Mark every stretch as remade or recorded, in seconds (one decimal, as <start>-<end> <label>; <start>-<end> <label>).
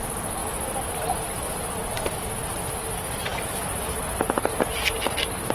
0.0-5.5 recorded